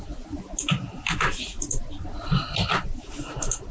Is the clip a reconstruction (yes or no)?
no